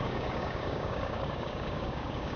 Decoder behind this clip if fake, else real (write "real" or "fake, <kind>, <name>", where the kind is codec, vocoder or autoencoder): fake, codec, DAC